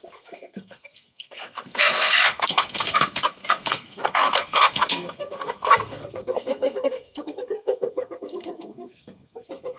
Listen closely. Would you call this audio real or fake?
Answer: fake